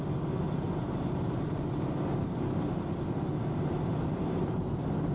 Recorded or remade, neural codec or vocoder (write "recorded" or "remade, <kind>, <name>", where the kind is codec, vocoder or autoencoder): recorded